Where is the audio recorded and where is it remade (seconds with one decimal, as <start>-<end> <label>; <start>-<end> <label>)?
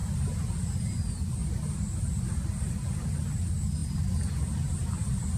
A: 0.0-3.8 recorded; 3.8-4.3 remade; 4.3-5.4 recorded